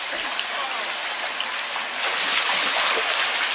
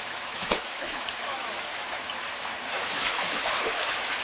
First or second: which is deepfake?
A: second